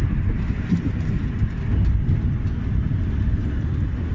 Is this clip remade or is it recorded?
recorded